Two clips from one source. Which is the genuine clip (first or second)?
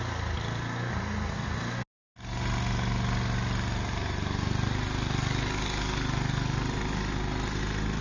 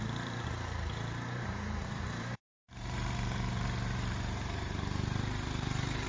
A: first